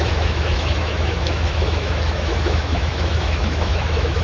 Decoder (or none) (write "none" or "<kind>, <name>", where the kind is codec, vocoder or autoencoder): autoencoder, DAC-VAE